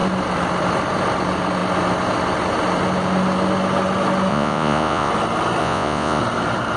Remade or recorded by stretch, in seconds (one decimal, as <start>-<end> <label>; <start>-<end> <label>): 0.0-4.3 recorded; 4.3-5.1 remade; 5.1-5.6 recorded; 5.6-6.2 remade; 6.2-6.8 recorded